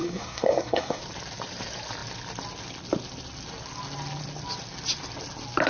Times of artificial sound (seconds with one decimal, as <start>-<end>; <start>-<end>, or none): 0.0-1.0